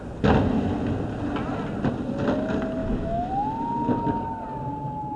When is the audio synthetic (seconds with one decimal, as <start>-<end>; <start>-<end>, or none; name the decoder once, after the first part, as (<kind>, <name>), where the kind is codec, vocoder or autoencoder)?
2.8-3.3 (autoencoder, DAC-VAE)